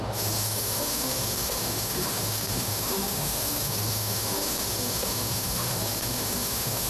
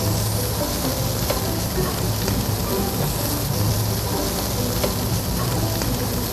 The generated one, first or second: first